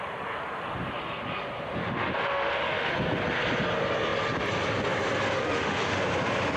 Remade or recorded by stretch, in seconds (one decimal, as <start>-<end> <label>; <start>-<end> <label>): 0.0-1.8 recorded; 1.8-2.9 remade; 2.9-5.4 recorded; 5.4-6.0 remade; 6.0-6.6 recorded